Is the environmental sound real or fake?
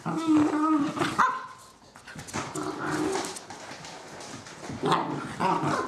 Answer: real